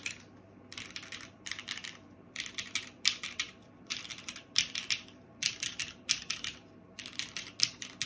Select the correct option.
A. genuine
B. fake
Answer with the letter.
B